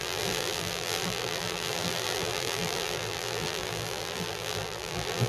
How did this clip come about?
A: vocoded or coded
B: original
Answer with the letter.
A